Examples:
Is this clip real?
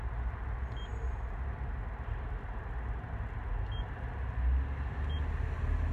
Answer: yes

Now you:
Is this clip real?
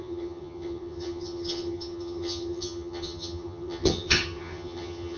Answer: no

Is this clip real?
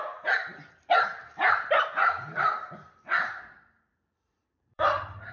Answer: no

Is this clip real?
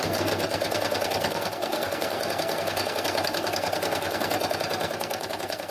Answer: no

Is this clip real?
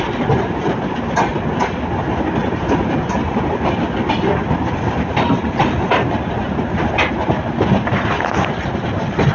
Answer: yes